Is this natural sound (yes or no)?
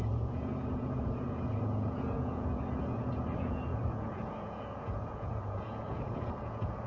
no